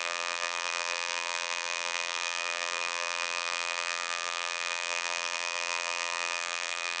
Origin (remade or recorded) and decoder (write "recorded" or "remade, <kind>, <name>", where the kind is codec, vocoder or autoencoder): remade, vocoder, BigVGAN v2